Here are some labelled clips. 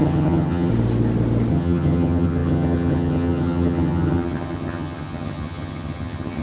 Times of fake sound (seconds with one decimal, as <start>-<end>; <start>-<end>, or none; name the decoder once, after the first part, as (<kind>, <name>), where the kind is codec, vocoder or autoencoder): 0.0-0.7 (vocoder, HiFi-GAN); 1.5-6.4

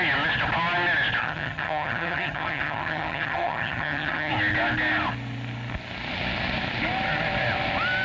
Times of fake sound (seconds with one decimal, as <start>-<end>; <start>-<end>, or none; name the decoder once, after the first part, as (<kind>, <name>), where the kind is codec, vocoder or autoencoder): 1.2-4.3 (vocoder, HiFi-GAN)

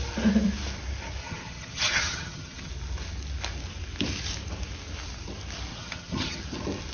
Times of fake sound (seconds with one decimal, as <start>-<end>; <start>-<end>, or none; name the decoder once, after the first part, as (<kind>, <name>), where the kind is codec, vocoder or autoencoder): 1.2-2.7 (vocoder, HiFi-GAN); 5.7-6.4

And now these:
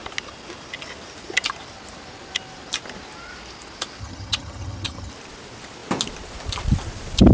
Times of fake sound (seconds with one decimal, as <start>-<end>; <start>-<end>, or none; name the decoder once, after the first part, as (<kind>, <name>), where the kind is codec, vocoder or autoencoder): 4.0-5.1 (vocoder, HiFi-GAN)

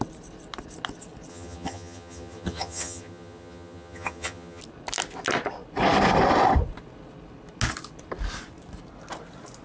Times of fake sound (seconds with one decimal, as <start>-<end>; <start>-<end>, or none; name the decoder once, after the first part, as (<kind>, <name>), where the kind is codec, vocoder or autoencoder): 1.3-4.6 (vocoder, HiFi-GAN)